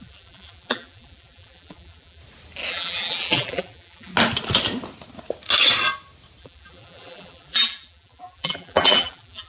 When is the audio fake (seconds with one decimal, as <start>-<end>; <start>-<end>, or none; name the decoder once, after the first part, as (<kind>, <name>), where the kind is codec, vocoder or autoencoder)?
0.0-2.2 (vocoder, BigVGAN v2); 2.7-4.1; 6.4-9.5